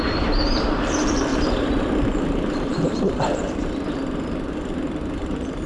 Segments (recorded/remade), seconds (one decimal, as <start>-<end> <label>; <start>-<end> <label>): 0.0-5.7 remade